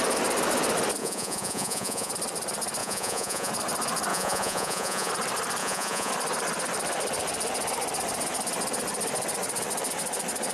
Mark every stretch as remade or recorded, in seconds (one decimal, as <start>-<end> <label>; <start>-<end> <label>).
0.0-1.0 recorded; 1.0-2.1 remade; 2.1-2.8 recorded; 2.8-3.5 remade; 3.5-4.1 recorded; 4.1-5.1 remade; 5.1-5.6 recorded; 5.6-6.1 remade; 6.1-10.5 recorded